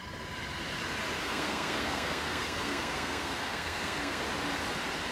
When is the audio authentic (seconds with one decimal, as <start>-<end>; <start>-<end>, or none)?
0.0-1.2; 4.2-5.1